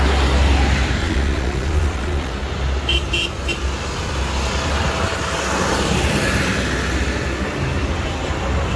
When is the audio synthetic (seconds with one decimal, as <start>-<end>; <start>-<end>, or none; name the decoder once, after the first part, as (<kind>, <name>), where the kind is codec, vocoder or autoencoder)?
1.0-2.3 (vocoder, Vocos)